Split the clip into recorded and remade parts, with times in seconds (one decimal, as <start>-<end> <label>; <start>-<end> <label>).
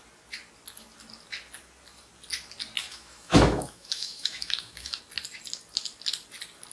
0.0-2.8 recorded; 2.8-5.0 remade; 5.0-6.7 recorded